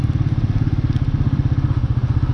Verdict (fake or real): real